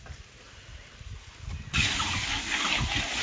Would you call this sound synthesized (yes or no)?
no